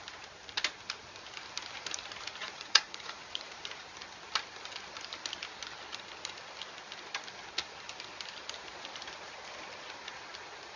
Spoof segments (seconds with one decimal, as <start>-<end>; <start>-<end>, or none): 2.4-3.6